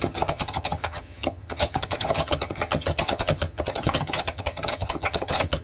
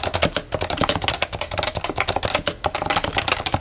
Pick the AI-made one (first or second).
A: first